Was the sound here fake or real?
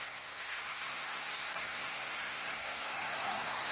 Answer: fake